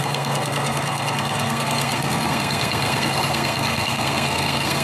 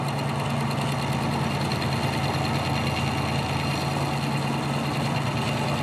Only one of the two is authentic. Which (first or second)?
second